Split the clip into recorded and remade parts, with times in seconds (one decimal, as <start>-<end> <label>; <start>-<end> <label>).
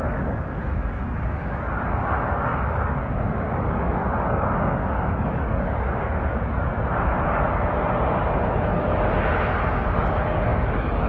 0.0-6.7 remade; 6.7-9.7 recorded; 9.7-11.1 remade